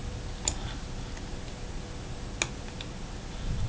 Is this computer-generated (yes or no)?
no